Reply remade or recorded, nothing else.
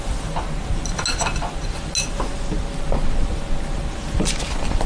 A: recorded